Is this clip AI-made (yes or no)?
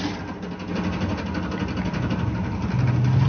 no